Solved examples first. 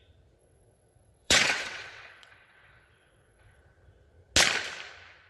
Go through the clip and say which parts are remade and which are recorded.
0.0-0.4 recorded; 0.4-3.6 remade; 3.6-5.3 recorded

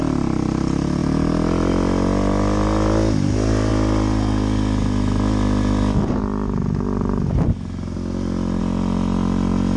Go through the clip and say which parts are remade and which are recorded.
0.0-9.8 recorded

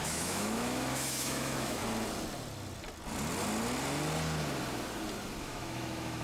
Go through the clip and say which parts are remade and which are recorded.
0.0-1.8 remade; 1.8-5.4 recorded; 5.4-6.2 remade

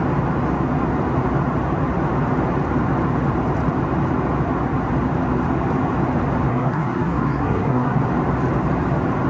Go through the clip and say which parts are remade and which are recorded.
0.0-6.5 recorded; 6.5-8.0 remade; 8.0-9.3 recorded

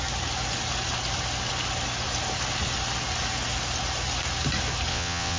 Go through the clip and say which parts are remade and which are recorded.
0.0-4.9 recorded; 4.9-5.4 remade

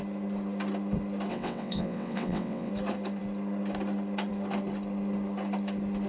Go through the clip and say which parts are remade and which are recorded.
0.0-1.3 recorded; 1.3-2.7 remade; 2.7-6.1 recorded

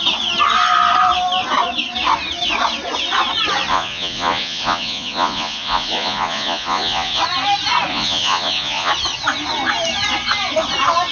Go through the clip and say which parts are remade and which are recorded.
0.0-3.7 recorded; 3.7-7.2 remade; 7.2-7.9 recorded; 7.9-8.9 remade; 8.9-11.1 recorded

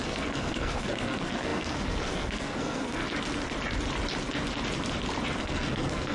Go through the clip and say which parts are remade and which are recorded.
0.0-3.0 remade; 3.0-5.4 recorded; 5.4-6.1 remade